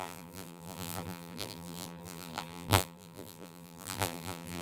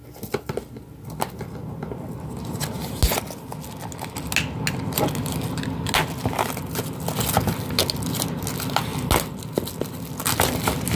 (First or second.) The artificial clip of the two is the first